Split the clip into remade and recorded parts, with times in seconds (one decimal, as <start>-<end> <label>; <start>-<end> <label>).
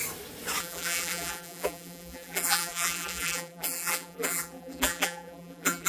0.0-0.6 recorded; 0.6-5.9 remade